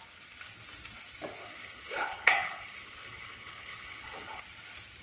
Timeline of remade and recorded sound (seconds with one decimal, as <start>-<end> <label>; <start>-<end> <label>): 0.0-1.4 recorded; 1.4-4.4 remade; 4.4-5.0 recorded

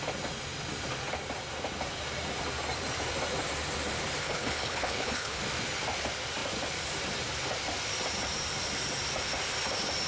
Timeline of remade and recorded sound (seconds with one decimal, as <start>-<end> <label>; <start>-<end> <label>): 0.0-4.2 recorded; 4.2-5.4 remade; 5.4-10.1 recorded

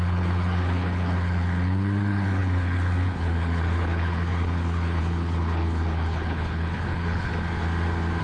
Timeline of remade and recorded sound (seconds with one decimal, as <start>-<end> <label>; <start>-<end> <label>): 0.0-7.3 remade; 7.3-8.2 recorded

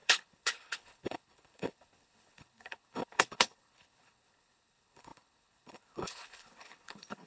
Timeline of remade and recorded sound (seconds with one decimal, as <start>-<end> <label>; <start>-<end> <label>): 0.0-7.3 remade